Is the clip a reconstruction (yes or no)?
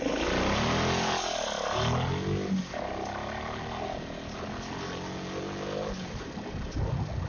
no